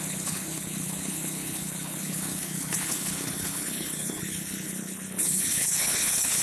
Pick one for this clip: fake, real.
fake